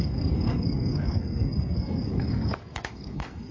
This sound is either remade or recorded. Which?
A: remade